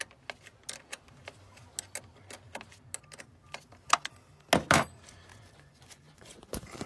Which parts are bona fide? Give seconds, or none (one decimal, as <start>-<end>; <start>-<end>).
0.0-5.3